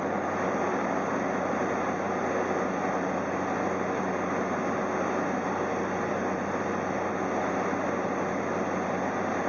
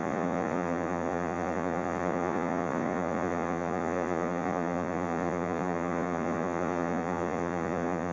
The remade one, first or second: second